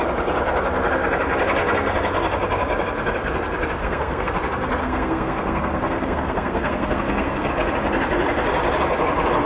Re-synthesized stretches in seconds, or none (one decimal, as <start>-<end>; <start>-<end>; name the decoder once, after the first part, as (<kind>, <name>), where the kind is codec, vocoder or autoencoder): 3.8-4.3 (codec, SNAC); 4.8-7.5